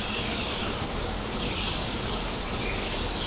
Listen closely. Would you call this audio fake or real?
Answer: fake